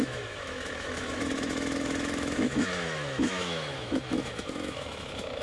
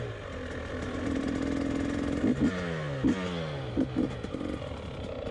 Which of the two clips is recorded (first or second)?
second